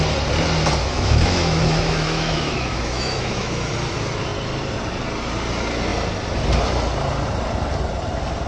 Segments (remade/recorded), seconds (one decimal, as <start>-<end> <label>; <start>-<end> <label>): 0.0-0.8 recorded; 0.8-3.7 remade; 3.7-8.5 recorded